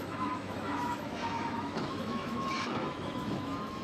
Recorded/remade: remade